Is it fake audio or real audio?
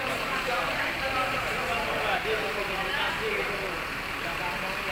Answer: fake